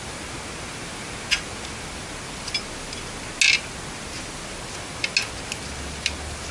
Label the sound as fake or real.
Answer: real